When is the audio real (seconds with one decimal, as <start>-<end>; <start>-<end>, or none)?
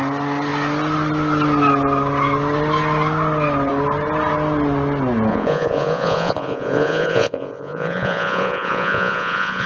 0.0-5.3